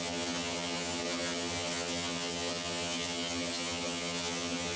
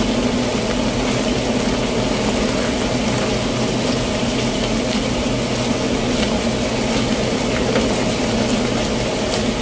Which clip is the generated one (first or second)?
first